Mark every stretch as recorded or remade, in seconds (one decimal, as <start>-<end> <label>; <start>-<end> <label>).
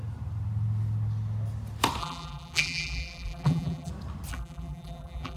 0.0-2.0 recorded; 2.0-3.9 remade; 3.9-4.3 recorded; 4.3-5.4 remade